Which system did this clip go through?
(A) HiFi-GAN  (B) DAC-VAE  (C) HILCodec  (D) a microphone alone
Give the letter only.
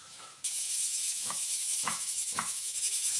B